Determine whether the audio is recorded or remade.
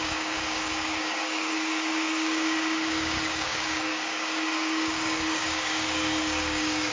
remade